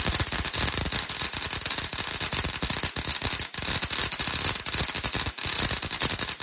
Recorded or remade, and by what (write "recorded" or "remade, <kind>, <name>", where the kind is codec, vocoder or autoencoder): recorded